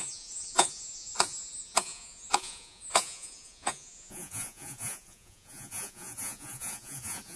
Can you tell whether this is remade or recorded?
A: remade